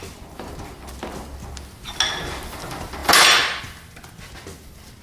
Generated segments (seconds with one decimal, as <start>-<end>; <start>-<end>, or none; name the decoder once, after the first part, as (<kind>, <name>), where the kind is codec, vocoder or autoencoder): none

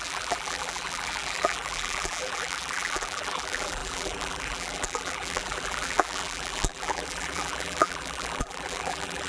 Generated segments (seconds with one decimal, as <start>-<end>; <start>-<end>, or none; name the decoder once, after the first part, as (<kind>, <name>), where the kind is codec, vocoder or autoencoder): 0.0-9.3 (vocoder, BigVGAN v2)

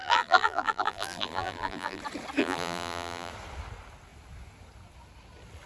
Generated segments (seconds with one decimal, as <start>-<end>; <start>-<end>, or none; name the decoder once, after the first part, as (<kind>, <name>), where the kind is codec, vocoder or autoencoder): 0.0-2.0 (vocoder, BigVGAN v2); 2.4-3.3

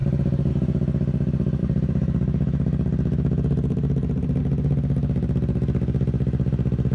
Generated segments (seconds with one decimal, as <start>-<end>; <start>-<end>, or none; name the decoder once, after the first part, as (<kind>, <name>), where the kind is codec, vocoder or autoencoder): 0.0-0.5 (vocoder, BigVGAN v2); 1.6-4.4

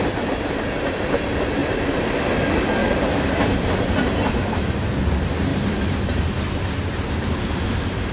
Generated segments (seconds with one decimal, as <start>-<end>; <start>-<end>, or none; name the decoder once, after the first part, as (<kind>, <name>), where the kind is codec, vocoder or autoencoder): 1.6-2.1 (vocoder, BigVGAN v2); 2.8-5.0; 5.5-8.1